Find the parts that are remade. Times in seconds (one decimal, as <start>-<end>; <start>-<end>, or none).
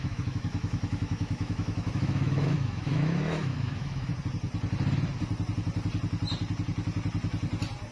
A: 0.0-4.1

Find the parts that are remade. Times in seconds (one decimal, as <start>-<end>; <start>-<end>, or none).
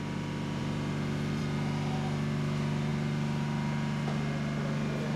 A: none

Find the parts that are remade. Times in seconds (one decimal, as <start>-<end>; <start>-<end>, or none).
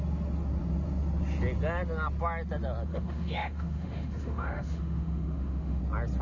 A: 2.9-5.8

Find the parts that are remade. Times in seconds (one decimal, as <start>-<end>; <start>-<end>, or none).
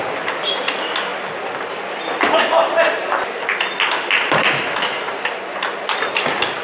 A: 4.4-4.9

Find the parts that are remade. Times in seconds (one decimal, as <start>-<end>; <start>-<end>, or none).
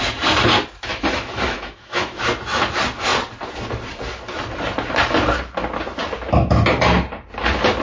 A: 0.9-2.2